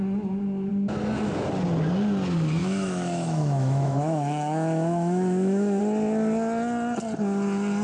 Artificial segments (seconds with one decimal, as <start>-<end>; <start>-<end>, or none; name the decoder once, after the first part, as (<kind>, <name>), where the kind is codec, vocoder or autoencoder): 2.6-5.8 (autoencoder, DAC-VAE)